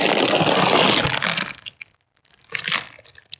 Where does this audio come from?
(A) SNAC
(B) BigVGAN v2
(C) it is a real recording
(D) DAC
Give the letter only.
C